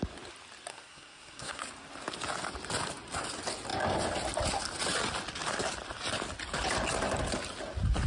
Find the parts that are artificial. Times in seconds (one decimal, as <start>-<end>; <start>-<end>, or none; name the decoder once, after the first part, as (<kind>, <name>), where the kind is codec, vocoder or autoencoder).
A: 0.7-1.6 (codec, SNAC)